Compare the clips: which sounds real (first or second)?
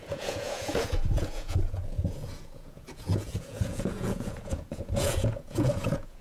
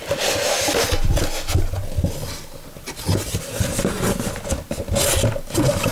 second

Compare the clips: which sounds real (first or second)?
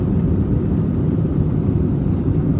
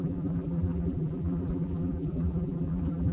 first